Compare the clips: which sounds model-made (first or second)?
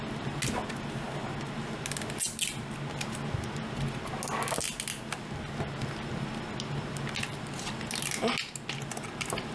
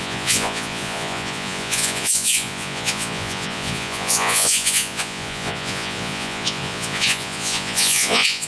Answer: second